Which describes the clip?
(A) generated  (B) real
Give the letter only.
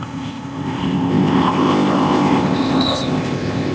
A